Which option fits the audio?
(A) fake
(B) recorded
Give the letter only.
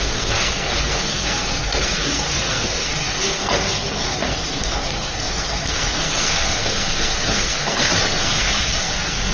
A